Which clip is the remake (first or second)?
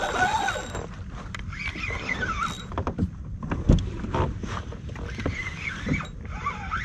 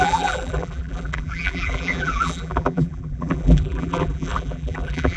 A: second